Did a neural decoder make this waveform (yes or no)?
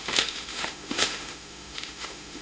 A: yes